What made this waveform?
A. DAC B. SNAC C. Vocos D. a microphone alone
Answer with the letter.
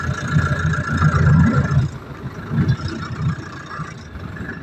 D